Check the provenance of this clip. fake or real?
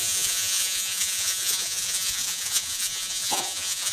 fake